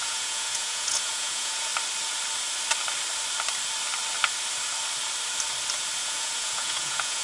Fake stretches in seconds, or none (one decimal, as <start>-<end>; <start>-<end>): 0.0-1.7; 6.0-7.2